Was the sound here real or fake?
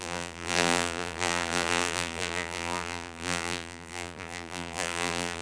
fake